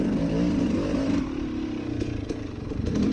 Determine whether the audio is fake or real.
real